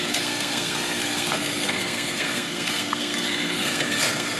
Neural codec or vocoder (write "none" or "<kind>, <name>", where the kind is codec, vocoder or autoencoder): codec, SNAC